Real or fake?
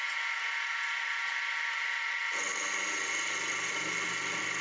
real